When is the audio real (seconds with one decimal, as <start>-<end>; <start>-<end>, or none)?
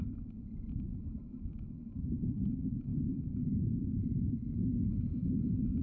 none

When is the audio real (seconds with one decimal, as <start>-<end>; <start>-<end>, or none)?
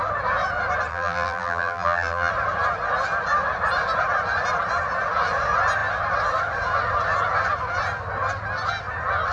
0.0-0.9; 2.3-9.3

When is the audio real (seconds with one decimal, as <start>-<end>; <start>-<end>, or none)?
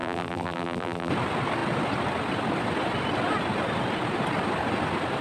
1.1-5.2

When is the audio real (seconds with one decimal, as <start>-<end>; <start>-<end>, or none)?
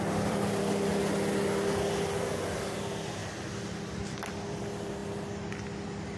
0.9-2.8; 5.0-6.2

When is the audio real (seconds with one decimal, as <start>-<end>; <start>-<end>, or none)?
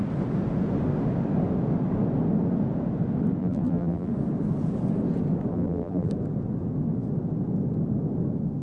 0.0-3.4; 4.1-5.5; 6.1-8.6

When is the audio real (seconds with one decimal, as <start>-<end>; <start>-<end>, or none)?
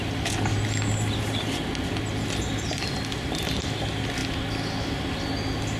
0.0-5.8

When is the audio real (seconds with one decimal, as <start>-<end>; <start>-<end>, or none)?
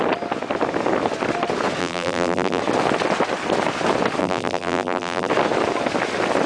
0.0-1.8; 2.6-4.2; 5.3-6.5